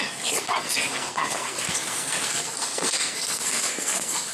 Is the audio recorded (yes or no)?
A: no